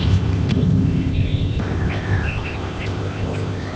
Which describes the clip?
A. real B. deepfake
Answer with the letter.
B